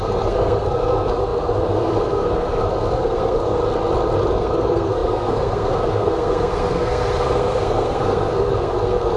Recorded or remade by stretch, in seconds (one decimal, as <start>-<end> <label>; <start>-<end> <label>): 0.0-3.6 remade; 3.6-4.3 recorded; 4.3-9.2 remade